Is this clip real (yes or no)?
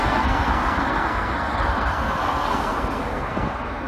no